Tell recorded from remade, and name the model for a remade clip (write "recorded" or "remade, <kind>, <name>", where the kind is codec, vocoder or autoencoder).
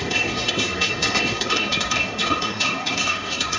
remade, codec, SNAC